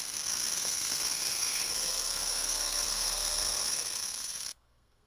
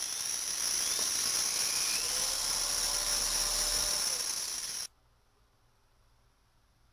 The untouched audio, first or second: second